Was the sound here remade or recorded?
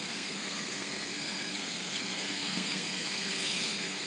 remade